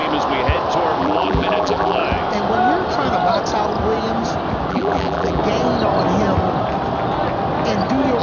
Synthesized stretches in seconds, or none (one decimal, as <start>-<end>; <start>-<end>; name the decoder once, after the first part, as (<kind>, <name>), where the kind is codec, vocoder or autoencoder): 1.0-2.0 (vocoder, BigVGAN v2); 4.7-5.4